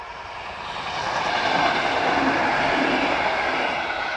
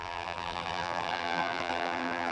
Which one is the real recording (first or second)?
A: first